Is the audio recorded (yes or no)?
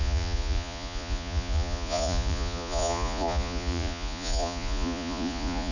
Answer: no